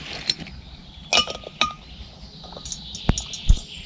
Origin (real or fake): real